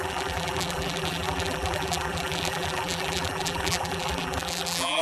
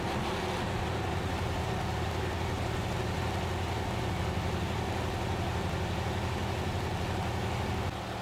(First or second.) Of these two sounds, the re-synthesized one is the first